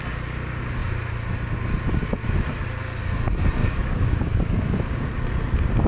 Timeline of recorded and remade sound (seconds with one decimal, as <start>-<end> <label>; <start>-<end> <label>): 0.0-3.6 recorded; 3.6-5.1 remade; 5.1-5.9 recorded